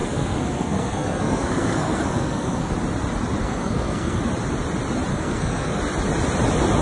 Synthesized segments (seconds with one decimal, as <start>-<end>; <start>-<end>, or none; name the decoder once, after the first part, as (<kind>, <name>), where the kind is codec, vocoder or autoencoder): 0.0-2.7 (codec, SNAC); 3.4-4.2; 5.1-5.8